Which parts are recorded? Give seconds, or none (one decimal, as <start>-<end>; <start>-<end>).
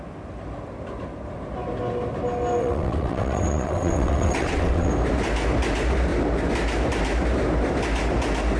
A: 0.0-2.6; 4.9-8.6